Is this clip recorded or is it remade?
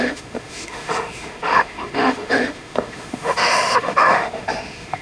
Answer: remade